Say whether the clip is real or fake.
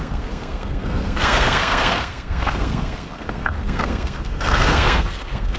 fake